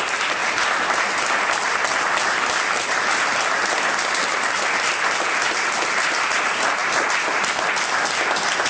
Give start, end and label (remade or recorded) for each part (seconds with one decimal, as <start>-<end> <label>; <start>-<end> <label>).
0.0-0.4 recorded; 0.4-1.0 remade; 1.0-8.7 recorded